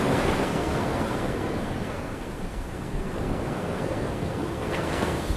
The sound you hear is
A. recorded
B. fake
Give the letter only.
B